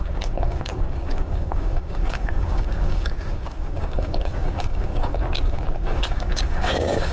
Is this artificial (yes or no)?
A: yes